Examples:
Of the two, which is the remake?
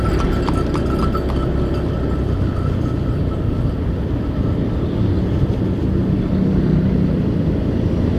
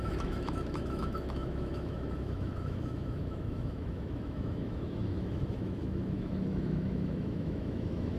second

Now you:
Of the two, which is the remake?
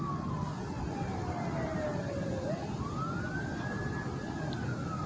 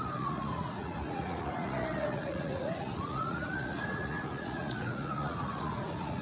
second